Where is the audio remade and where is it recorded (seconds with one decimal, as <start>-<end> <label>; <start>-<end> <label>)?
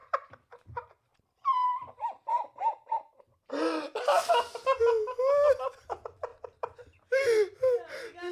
0.0-4.3 remade; 4.3-6.3 recorded; 6.3-7.0 remade; 7.0-8.3 recorded